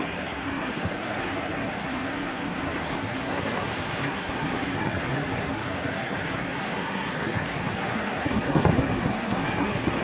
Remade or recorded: remade